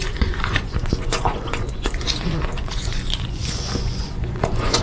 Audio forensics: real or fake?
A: fake